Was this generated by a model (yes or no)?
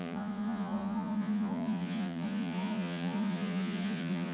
yes